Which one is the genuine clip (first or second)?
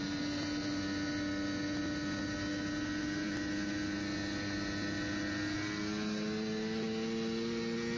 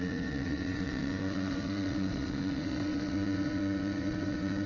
first